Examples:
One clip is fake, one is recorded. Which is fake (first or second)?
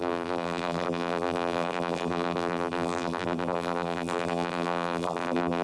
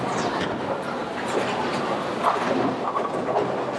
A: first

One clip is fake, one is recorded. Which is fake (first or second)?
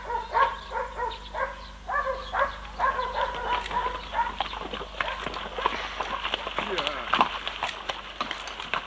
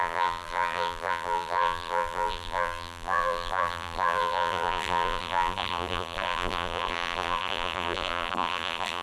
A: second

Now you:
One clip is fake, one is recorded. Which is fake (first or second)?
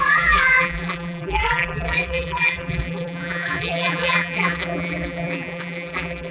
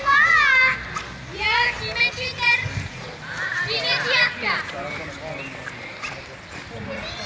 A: first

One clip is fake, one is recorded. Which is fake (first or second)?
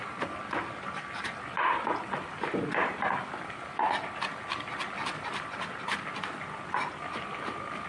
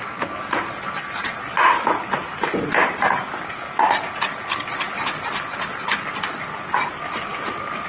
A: first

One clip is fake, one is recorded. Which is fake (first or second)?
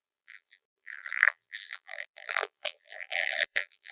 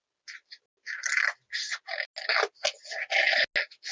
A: first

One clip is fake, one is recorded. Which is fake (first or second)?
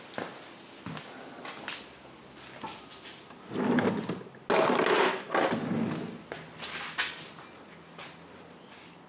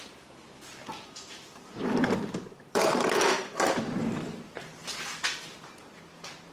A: second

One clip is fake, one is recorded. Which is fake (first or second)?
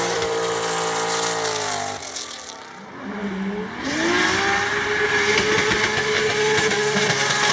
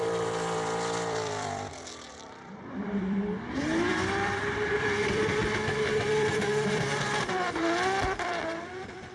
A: second